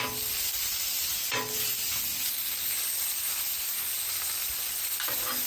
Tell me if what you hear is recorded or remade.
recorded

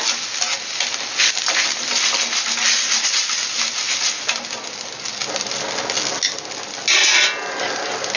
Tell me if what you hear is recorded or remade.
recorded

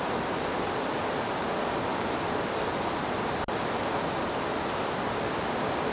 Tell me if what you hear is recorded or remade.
recorded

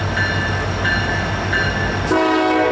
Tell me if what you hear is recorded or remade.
recorded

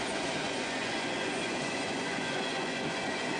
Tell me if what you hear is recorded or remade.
remade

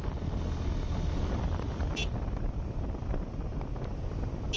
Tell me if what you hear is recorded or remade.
recorded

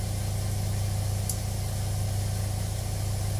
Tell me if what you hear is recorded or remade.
recorded